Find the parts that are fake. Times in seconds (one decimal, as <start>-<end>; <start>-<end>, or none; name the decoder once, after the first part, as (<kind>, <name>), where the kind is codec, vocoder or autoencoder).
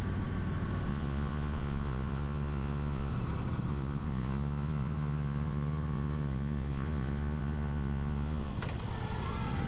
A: 0.9-3.1 (vocoder, Vocos); 3.7-8.5